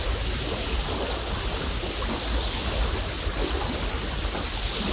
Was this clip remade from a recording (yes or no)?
no